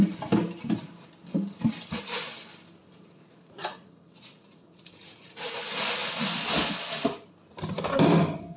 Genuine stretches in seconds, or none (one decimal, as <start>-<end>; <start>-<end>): 0.0-2.8; 5.6-8.6

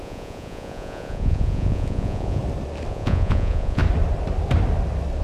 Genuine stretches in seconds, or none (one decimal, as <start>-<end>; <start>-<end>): 2.4-2.9; 3.8-5.2

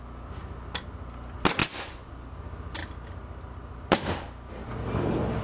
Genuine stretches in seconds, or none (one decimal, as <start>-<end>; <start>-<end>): 0.0-1.6; 2.1-5.4

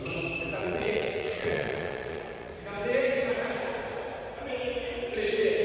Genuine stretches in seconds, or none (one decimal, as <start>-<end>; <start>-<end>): 0.0-0.6; 2.5-5.6

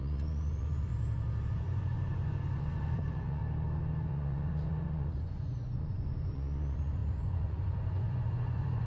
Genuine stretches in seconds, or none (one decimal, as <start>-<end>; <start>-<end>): 0.9-1.5; 3.4-4.1

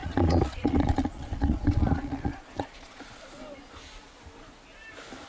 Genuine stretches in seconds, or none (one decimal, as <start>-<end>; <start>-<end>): 3.2-5.3